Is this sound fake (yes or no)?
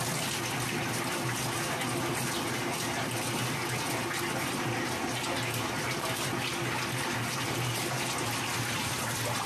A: no